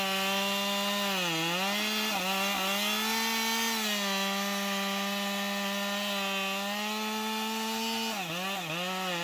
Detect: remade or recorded recorded